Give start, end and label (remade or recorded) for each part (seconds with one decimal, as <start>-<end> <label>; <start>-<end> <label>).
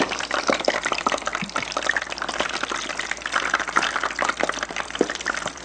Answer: 0.0-1.3 remade; 1.3-4.7 recorded; 4.7-5.6 remade